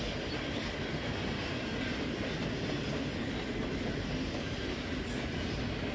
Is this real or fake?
real